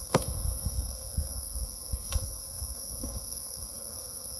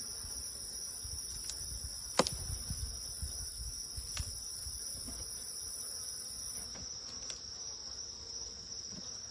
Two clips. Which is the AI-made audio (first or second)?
first